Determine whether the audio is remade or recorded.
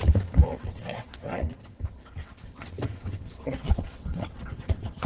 remade